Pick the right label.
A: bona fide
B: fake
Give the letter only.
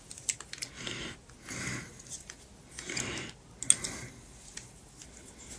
A